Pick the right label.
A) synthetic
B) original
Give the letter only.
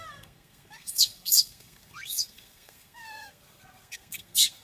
A